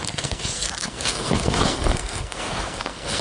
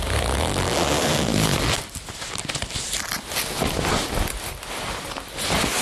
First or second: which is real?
second